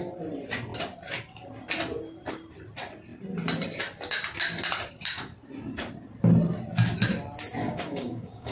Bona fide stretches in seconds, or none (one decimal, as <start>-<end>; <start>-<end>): 0.0-7.6